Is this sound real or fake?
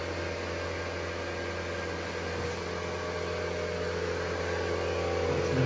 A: real